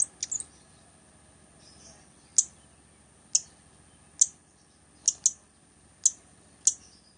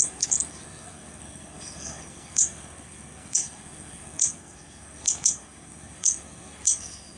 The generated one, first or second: second